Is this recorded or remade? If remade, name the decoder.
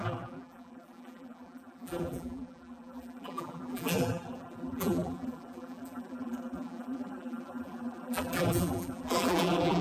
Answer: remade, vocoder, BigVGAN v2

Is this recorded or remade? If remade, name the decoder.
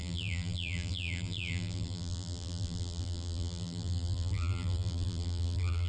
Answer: remade, vocoder, BigVGAN v2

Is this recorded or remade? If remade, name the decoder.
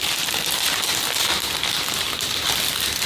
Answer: recorded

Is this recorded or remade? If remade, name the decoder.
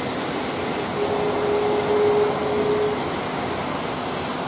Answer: recorded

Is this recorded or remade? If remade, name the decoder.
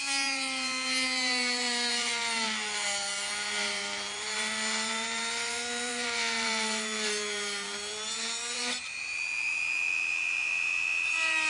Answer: remade, vocoder, BigVGAN v2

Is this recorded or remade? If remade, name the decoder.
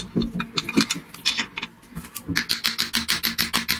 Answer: recorded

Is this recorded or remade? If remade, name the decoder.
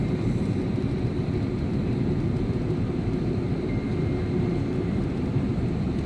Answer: remade, vocoder, BigVGAN v2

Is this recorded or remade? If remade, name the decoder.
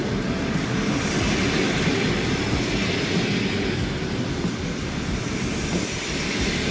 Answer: recorded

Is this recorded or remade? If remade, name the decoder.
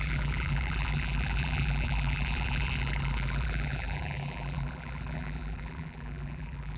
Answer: remade, vocoder, BigVGAN v2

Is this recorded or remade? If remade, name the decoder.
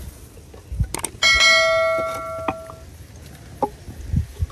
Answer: recorded